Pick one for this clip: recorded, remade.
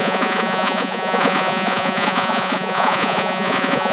remade